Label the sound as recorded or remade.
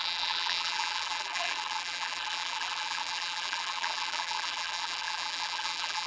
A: remade